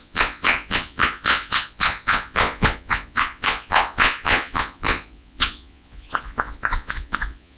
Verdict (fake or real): fake